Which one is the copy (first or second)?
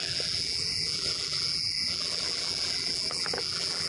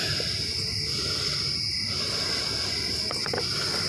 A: first